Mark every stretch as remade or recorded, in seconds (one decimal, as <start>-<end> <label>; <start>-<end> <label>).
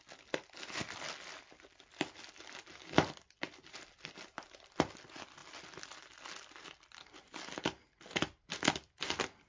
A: 0.0-9.5 recorded